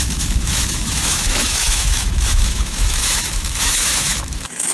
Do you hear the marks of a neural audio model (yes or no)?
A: yes